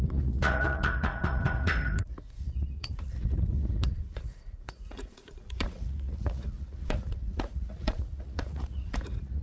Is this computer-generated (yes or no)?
yes